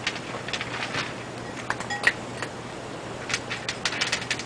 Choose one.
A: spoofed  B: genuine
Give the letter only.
B